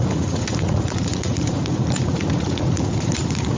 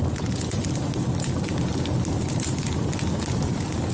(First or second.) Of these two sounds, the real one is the second